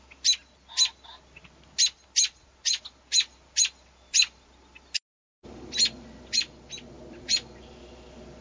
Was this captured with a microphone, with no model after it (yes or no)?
yes